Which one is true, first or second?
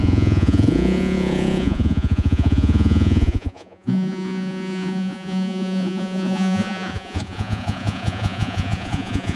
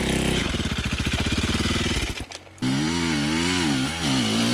second